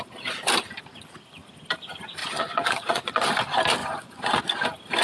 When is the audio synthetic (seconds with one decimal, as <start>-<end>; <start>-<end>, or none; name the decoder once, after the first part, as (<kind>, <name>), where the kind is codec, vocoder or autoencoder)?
2.2-3.3 (vocoder, Vocos); 3.8-4.3